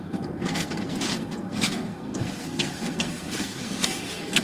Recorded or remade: remade